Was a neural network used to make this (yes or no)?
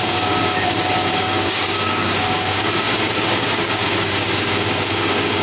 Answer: yes